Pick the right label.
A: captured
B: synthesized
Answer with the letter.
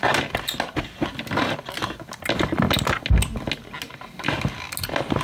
A